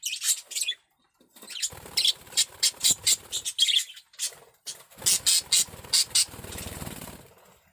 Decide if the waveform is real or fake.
real